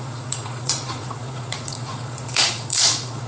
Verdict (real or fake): fake